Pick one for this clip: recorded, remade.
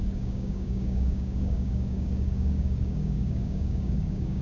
remade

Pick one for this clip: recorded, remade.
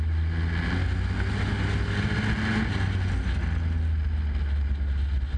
recorded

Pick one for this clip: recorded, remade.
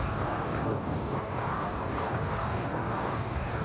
remade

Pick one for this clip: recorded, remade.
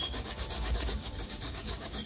remade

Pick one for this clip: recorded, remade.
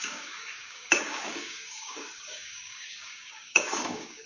remade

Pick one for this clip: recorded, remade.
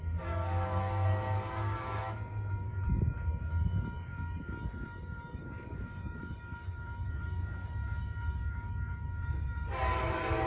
remade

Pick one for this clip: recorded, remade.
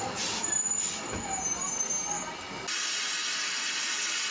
recorded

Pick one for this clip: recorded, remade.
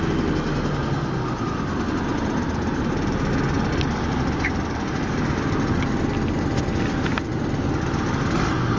recorded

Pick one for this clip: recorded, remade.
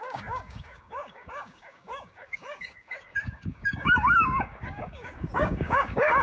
remade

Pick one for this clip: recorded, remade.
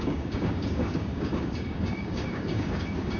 remade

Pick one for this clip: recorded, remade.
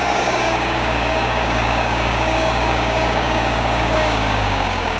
remade